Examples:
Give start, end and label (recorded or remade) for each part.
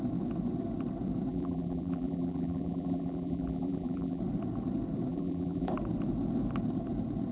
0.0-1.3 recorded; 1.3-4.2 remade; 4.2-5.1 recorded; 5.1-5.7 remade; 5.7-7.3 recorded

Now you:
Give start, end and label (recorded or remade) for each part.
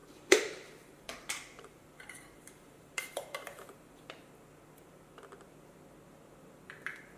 0.0-4.3 remade; 4.3-7.2 recorded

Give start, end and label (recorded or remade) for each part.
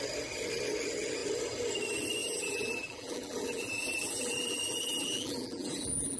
0.0-2.2 recorded; 2.2-6.2 remade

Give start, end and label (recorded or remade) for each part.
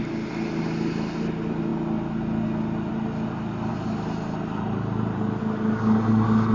0.0-3.7 recorded; 3.7-5.4 remade; 5.4-6.5 recorded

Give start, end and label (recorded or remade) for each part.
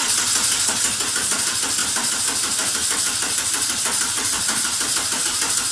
0.0-1.8 recorded; 1.8-5.2 remade; 5.2-5.7 recorded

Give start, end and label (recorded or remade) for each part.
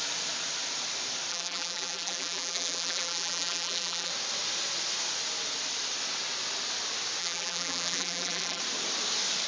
0.0-1.3 recorded; 1.3-4.1 remade; 4.1-7.2 recorded; 7.2-8.6 remade; 8.6-9.5 recorded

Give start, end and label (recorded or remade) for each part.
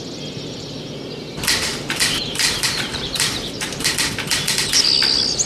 0.0-1.7 recorded; 1.7-3.9 remade; 3.9-5.5 recorded